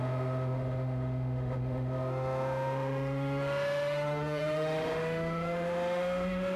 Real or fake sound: fake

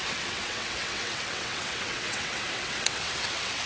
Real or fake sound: fake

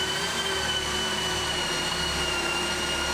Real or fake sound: fake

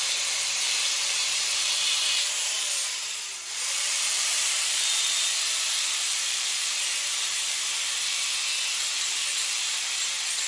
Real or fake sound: fake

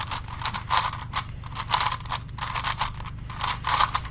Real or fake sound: real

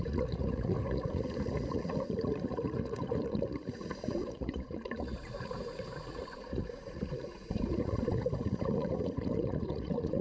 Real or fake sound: fake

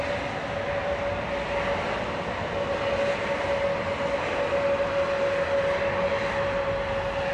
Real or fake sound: real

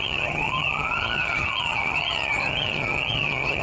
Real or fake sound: fake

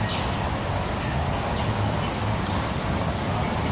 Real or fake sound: real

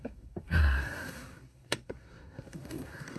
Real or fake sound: fake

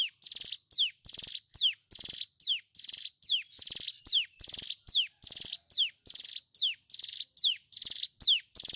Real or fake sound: real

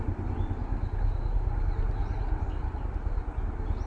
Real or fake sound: real